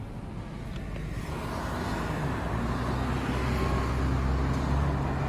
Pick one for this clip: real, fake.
real